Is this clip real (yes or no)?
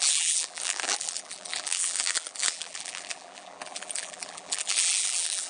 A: no